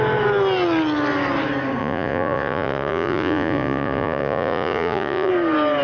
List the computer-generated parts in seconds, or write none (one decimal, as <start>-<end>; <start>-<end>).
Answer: 1.8-5.3